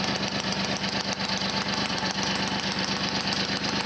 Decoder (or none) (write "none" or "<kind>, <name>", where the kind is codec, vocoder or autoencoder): none